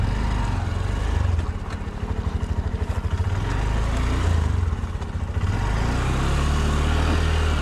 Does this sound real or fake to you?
real